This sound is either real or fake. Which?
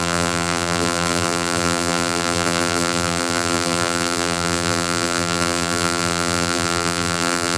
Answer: fake